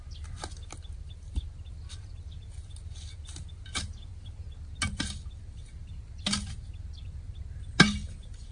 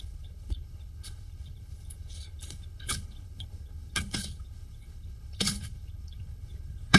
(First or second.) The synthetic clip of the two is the second